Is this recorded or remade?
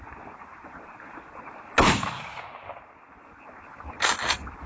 recorded